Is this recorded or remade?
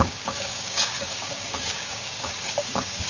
remade